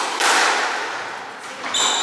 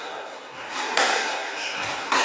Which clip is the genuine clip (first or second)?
first